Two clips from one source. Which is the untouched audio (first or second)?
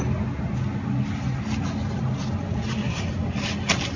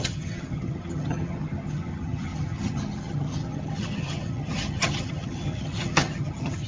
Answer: first